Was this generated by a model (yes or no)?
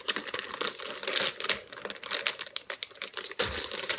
no